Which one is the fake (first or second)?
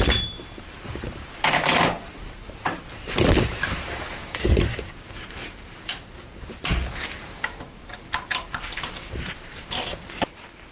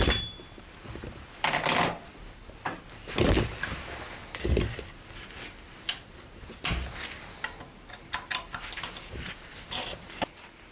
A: first